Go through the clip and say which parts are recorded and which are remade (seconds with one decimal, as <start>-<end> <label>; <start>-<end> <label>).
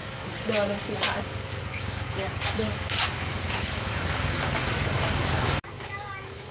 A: 0.0-6.5 remade